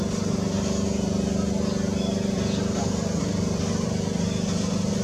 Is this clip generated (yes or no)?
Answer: no